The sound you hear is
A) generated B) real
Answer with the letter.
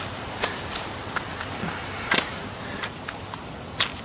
B